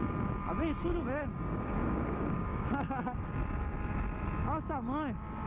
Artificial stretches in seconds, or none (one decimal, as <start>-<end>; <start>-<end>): 0.8-3.3